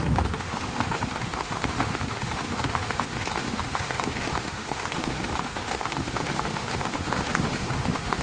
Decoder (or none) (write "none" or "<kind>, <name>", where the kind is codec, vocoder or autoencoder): autoencoder, DAC-VAE